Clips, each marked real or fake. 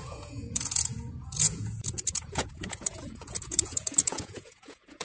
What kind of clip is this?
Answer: fake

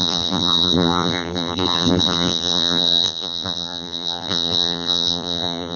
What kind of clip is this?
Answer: fake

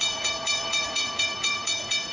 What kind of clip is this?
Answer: fake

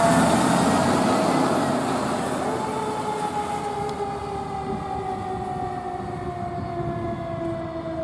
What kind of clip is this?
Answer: real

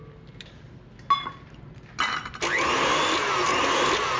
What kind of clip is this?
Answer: real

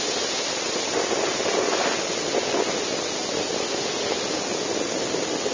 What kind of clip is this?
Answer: real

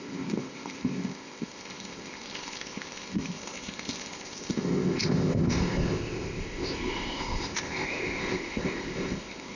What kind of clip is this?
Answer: fake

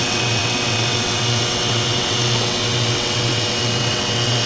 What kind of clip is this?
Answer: fake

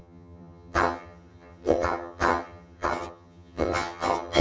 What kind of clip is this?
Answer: fake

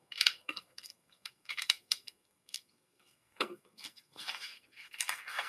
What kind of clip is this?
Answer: fake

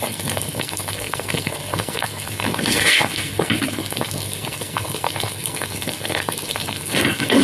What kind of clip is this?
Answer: fake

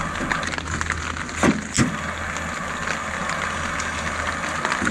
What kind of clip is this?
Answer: real